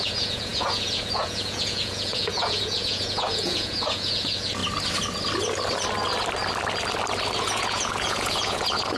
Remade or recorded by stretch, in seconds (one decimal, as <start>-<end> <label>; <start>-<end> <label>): 0.0-4.6 remade; 4.6-7.4 recorded; 7.4-9.0 remade